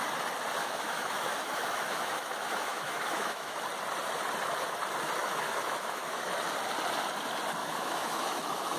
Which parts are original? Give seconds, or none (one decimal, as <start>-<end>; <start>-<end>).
0.0-0.6; 3.6-5.2; 6.4-7.6